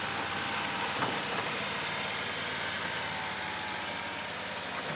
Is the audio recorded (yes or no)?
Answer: yes